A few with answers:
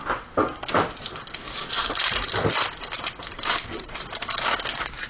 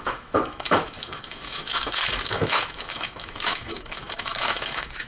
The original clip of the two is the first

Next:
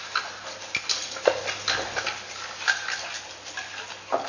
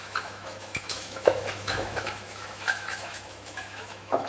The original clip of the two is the first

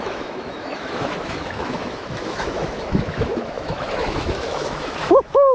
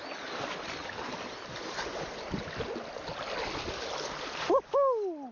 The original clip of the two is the second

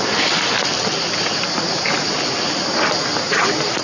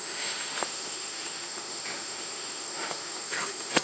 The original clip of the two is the first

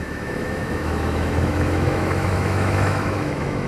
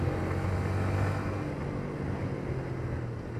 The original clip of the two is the second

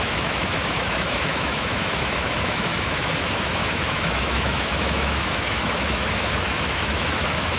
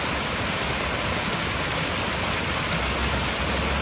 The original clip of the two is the second